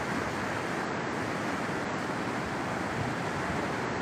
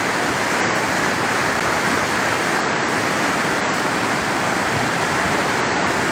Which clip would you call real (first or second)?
first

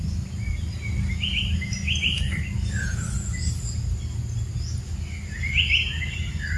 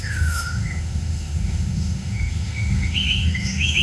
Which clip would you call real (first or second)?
first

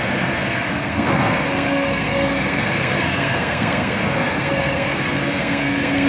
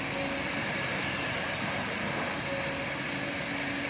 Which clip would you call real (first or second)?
second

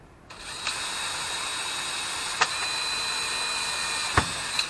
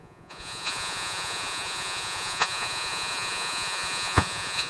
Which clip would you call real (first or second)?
first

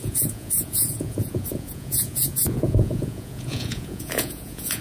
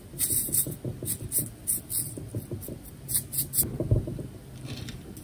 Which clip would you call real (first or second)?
second